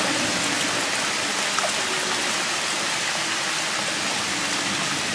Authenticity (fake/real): real